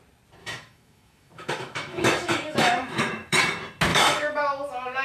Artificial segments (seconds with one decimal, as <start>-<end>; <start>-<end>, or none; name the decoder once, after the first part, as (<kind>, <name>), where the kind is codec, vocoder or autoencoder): 0.4-3.4 (autoencoder, DAC-VAE); 3.9-4.4